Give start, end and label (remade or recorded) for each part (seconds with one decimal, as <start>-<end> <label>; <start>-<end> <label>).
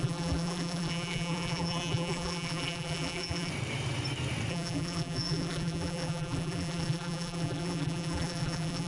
0.0-3.5 remade; 3.5-4.5 recorded; 4.5-8.9 remade